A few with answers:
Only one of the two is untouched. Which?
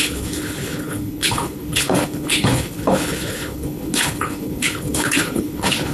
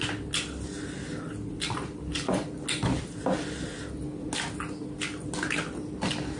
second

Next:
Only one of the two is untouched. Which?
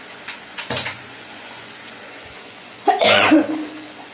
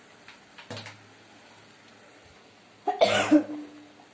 second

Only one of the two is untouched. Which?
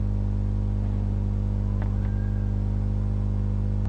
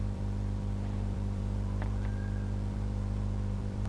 first